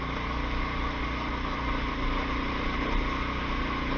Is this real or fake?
real